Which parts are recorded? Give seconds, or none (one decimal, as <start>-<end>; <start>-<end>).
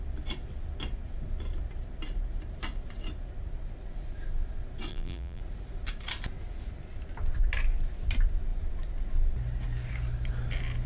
0.0-4.9; 5.4-10.9